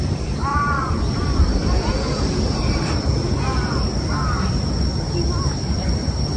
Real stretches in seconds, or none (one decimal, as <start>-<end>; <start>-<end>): 0.0-0.5; 1.1-6.4